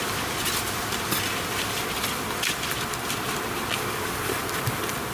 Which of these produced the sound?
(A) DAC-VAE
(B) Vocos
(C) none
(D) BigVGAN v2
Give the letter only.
D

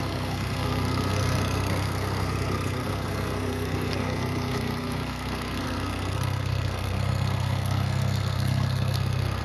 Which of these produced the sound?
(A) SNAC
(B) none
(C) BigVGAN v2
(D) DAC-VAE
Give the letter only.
A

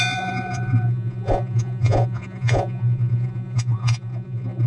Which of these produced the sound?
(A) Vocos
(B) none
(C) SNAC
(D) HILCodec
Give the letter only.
A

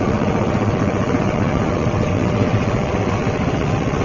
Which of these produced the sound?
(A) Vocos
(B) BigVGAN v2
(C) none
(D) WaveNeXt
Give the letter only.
D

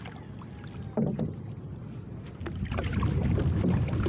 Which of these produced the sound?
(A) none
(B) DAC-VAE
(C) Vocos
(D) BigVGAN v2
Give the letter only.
A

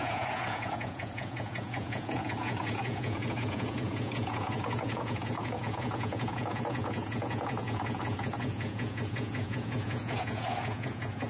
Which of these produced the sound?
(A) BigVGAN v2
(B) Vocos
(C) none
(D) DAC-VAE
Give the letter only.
B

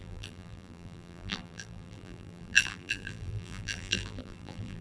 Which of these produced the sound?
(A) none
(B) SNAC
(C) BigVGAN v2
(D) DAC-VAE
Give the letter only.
C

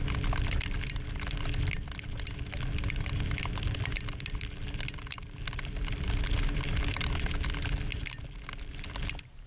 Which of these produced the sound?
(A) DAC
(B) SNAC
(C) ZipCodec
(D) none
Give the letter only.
D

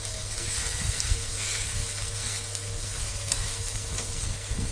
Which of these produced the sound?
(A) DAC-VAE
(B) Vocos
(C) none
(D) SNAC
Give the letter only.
D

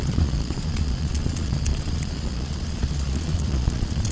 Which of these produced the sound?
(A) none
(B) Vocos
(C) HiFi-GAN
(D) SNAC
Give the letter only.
B